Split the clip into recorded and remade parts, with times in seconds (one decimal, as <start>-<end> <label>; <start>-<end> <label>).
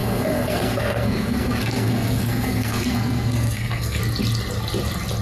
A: 0.0-4.0 remade; 4.0-5.2 recorded